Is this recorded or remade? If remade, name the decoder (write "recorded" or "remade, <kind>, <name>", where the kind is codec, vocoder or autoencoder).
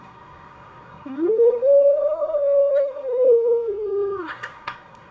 remade, codec, SNAC